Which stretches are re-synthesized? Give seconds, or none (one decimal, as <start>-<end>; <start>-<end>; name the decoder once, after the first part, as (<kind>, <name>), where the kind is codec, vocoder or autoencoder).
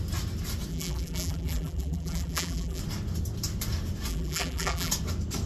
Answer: 0.7-2.8 (vocoder, BigVGAN v2); 4.1-4.9